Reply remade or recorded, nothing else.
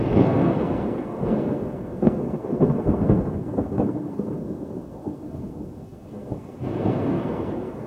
remade